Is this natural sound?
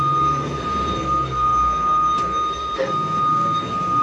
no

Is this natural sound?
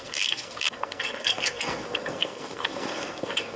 no